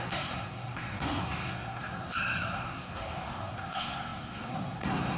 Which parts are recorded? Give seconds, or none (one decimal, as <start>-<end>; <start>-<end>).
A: none